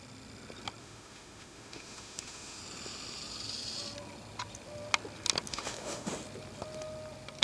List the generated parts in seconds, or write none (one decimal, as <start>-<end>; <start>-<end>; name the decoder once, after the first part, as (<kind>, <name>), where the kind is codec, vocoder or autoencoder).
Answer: 0.8-2.6 (autoencoder, DAC-VAE); 5.5-6.1